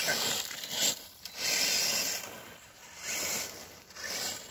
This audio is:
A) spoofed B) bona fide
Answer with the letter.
B